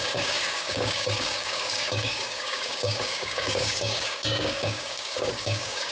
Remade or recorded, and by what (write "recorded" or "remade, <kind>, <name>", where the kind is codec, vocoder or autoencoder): remade, codec, DAC